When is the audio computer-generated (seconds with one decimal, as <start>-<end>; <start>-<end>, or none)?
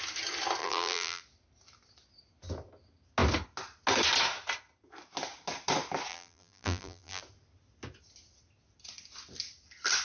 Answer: 0.6-1.2; 6.1-7.2